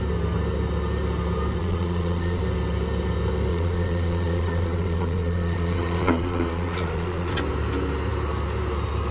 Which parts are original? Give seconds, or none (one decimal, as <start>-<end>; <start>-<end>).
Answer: 0.0-1.6; 2.4-3.5; 7.4-9.1